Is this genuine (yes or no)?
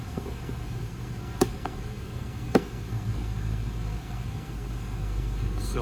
no